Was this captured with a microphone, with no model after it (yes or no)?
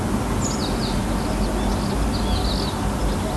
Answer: yes